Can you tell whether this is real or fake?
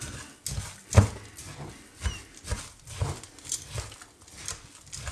real